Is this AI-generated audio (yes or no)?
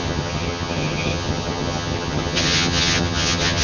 yes